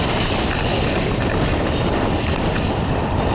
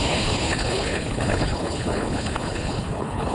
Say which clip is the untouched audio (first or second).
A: first